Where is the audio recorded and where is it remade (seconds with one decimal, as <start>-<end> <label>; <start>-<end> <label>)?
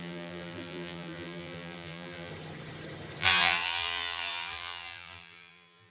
0.0-2.3 remade; 2.3-3.2 recorded; 3.2-5.9 remade